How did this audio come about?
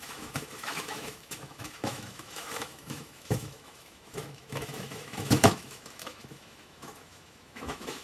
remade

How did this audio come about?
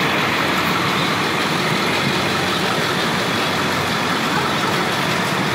remade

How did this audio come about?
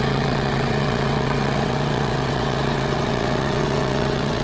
remade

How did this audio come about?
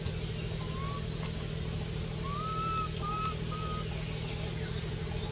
recorded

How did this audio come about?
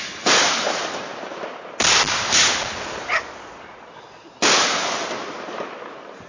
recorded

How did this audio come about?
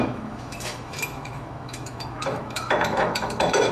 remade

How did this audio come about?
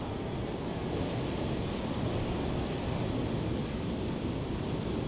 remade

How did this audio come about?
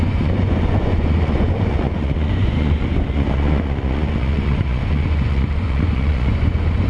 remade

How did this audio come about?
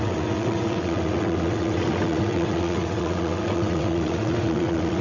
remade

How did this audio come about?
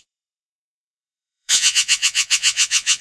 remade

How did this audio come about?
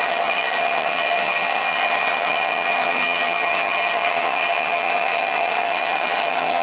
remade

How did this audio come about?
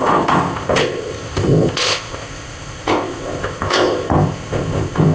remade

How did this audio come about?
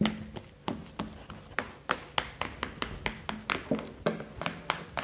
recorded